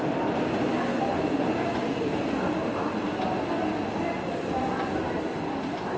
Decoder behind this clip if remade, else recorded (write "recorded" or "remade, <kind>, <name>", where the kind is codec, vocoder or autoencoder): recorded